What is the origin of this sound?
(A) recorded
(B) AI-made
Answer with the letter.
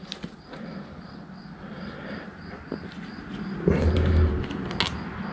A